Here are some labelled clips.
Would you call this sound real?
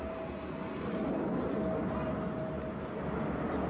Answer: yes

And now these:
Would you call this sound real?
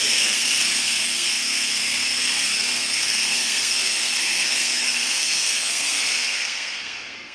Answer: no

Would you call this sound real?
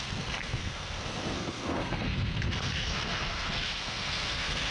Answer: no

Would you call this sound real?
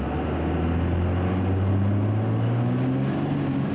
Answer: yes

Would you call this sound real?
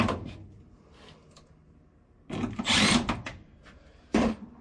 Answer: yes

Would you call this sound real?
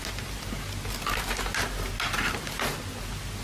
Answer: yes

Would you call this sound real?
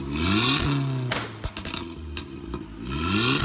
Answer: yes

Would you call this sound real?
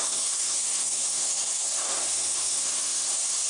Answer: no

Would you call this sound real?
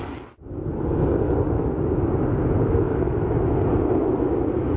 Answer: yes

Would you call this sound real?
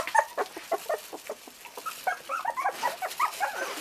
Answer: yes